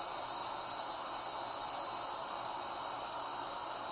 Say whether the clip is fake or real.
fake